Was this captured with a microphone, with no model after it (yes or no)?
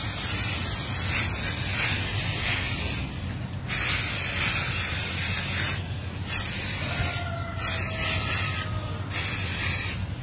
yes